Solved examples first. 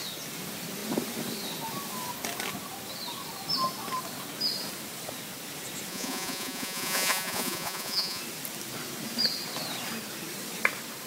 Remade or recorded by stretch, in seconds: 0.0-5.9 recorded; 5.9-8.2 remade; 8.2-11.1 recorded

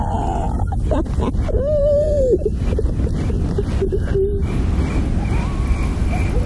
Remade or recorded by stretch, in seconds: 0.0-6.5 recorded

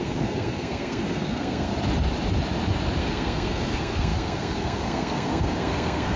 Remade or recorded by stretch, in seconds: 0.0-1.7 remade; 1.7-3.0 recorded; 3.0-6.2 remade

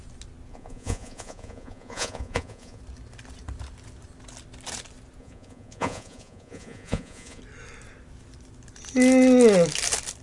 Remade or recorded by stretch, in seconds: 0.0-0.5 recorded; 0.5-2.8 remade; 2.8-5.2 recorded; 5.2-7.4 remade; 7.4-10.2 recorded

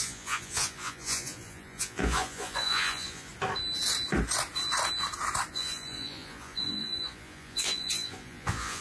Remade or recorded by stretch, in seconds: 0.0-3.3 remade; 3.3-5.5 recorded; 5.5-8.8 remade

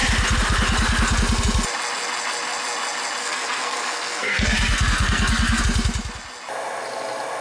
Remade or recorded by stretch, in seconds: 0.0-3.2 recorded; 3.2-5.6 remade; 5.6-7.4 recorded

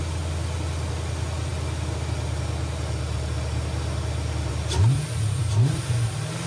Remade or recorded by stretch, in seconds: 0.0-6.5 recorded